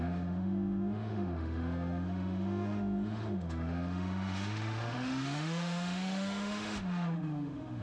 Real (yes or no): no